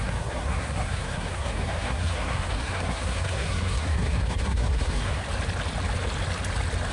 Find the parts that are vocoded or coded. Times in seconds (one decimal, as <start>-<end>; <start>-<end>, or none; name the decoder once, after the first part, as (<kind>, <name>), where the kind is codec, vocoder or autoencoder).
0.0-5.2 (codec, SNAC)